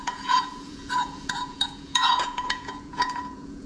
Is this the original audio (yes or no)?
no